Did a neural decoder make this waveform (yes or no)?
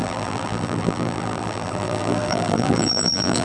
yes